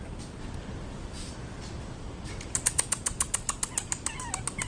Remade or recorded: recorded